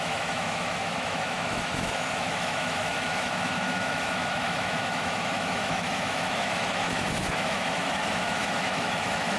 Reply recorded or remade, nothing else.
remade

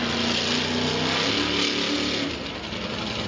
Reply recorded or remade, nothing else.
recorded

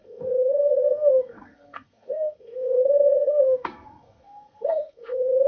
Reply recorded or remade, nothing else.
remade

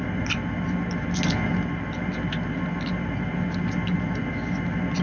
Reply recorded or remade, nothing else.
recorded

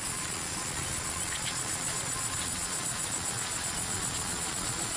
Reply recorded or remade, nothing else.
remade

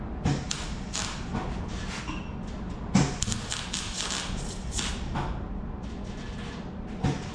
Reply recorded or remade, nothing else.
recorded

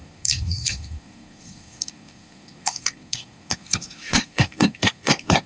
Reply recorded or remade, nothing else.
remade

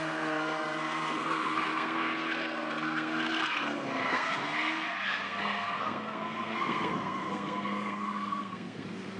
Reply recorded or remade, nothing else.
remade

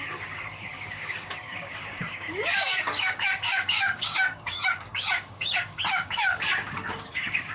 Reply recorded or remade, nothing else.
remade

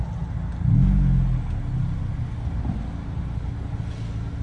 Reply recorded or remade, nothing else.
recorded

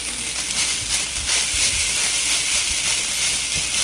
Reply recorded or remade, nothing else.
recorded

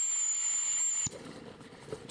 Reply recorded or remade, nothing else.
recorded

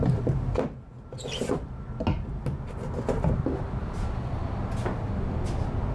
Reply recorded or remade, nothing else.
recorded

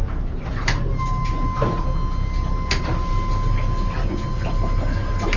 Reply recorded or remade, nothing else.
recorded